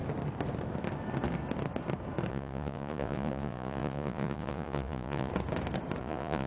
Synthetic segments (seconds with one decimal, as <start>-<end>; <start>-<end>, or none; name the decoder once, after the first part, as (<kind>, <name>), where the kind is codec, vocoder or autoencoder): 2.3-5.3 (vocoder, Vocos); 6.0-6.5